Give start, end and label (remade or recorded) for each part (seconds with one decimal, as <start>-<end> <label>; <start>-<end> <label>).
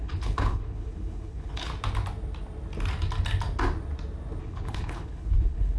0.0-1.7 remade; 1.7-4.4 recorded; 4.4-5.8 remade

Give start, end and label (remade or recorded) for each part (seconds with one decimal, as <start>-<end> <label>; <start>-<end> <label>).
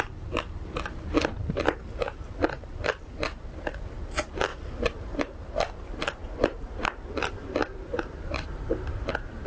0.0-1.8 remade; 1.8-2.7 recorded; 2.7-9.5 remade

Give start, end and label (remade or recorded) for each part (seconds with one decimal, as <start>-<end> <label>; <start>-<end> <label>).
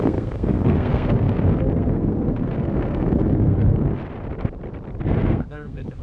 0.0-4.0 remade; 4.0-5.0 recorded; 5.0-6.0 remade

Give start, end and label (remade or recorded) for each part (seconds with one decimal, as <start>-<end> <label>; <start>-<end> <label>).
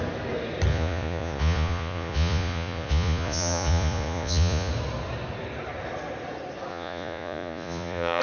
0.0-0.7 recorded; 0.7-4.7 remade; 4.7-6.7 recorded; 6.7-8.2 remade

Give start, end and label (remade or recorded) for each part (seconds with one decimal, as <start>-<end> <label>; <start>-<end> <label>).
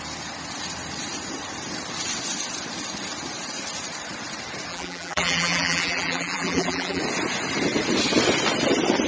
0.0-4.7 recorded; 4.7-7.0 remade; 7.0-9.1 recorded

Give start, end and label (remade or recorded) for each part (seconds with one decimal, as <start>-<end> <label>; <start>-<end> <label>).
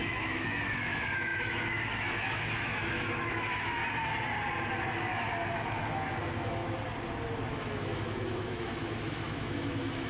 0.0-3.8 remade; 3.8-5.6 recorded; 5.6-6.6 remade; 6.6-7.5 recorded; 7.5-10.1 remade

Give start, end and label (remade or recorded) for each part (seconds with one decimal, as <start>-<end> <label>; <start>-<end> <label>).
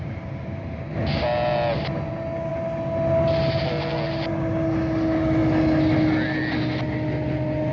0.0-7.7 recorded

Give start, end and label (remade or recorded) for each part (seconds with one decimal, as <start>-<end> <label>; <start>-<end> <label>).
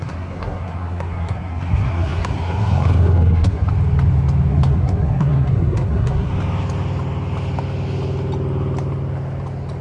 0.0-3.7 remade; 3.7-4.5 recorded; 4.5-6.3 remade; 6.3-9.8 recorded